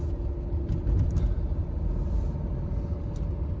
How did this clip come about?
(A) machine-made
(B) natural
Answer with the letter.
B